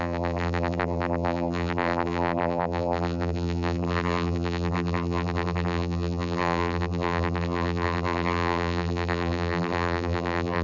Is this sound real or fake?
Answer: fake